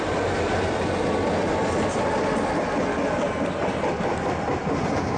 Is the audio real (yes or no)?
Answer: yes